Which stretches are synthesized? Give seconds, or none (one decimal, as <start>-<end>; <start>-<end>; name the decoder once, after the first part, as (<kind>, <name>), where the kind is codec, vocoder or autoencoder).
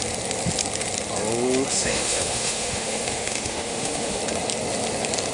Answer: 1.7-4.2 (autoencoder, DAC-VAE)